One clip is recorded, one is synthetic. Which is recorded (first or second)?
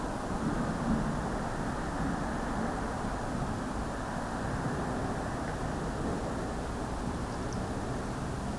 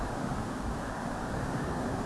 first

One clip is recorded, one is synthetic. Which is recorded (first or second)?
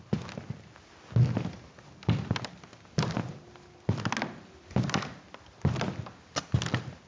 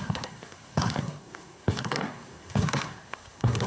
first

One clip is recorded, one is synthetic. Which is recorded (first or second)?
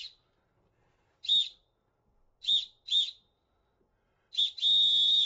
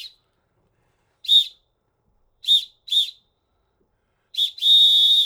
first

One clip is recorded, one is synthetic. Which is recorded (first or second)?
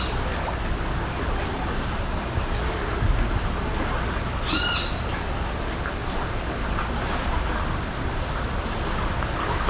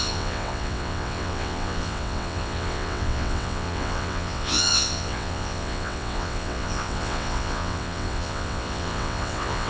first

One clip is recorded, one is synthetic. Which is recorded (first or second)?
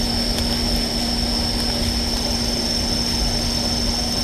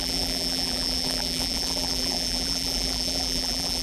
first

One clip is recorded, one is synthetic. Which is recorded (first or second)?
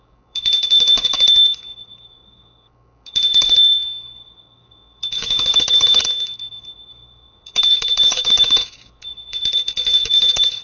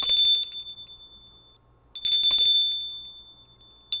second